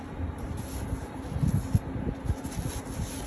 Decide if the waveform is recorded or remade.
recorded